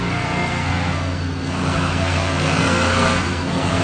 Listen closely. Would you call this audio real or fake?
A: fake